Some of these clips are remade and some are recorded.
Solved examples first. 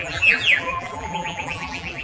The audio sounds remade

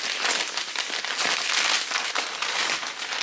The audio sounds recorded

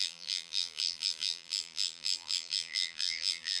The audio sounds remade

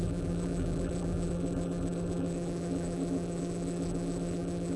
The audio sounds remade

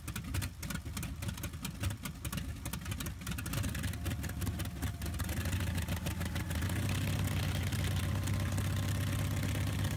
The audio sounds recorded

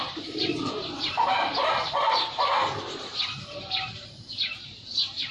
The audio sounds remade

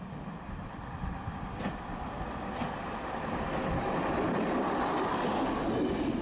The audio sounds recorded